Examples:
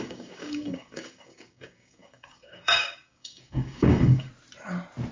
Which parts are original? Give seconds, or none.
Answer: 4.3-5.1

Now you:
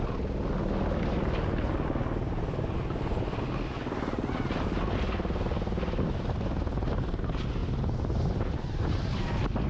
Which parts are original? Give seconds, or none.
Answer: 0.0-9.7

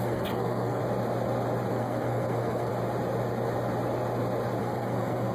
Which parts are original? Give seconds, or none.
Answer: 0.8-1.7; 2.7-4.6

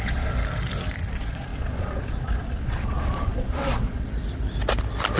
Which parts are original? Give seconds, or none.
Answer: 0.4-1.1; 4.1-5.2